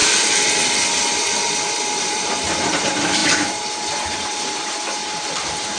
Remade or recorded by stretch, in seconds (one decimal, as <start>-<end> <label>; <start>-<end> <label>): 0.0-2.0 recorded; 2.0-5.8 remade